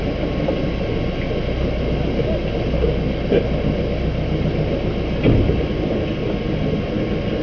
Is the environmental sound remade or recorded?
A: recorded